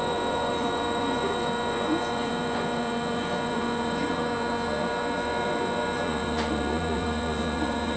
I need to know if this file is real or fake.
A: fake